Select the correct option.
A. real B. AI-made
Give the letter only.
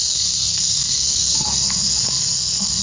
B